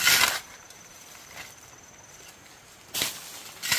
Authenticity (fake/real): fake